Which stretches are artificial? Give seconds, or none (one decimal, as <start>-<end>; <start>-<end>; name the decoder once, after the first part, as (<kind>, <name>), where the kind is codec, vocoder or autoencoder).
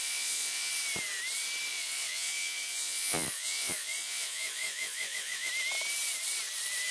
0.0-0.7 (vocoder, Vocos); 1.7-5.5